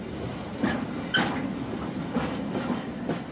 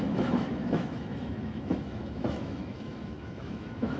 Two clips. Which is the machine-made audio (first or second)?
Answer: second